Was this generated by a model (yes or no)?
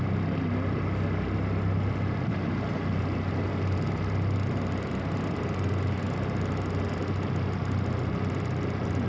no